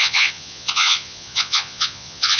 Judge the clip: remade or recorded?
remade